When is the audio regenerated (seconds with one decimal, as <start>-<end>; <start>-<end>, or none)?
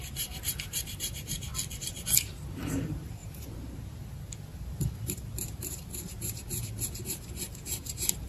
0.0-1.5; 2.5-8.3